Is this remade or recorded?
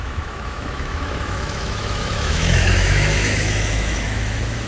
remade